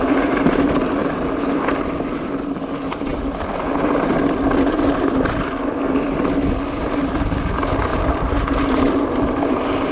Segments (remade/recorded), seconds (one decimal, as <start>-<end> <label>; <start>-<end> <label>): 0.0-1.0 recorded; 1.0-1.6 remade; 1.6-7.9 recorded; 7.9-8.9 remade; 8.9-9.9 recorded